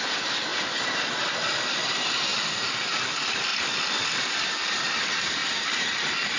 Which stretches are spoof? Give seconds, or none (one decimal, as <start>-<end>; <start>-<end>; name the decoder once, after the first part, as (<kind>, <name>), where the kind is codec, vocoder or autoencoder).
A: 0.0-0.5 (vocoder, BigVGAN v2); 1.7-3.5; 4.1-6.4